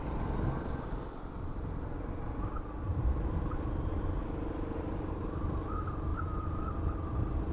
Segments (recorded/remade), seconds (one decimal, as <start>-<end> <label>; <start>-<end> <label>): 0.0-6.1 recorded; 6.1-6.7 remade; 6.7-7.5 recorded